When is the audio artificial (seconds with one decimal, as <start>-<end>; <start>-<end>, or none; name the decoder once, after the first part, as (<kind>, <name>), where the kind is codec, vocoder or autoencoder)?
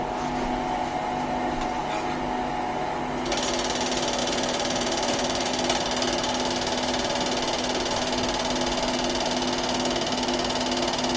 4.2-5.5 (vocoder, BigVGAN v2)